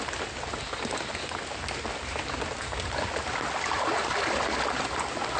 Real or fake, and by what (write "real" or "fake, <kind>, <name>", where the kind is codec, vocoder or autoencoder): real